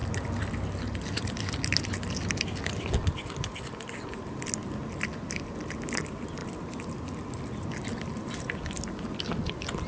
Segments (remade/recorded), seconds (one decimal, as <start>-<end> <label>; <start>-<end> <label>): 0.0-2.6 remade; 2.6-6.4 recorded; 6.4-8.4 remade; 8.4-9.9 recorded